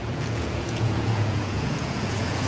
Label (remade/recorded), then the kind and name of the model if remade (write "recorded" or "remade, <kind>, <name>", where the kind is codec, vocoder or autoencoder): remade, vocoder, Vocos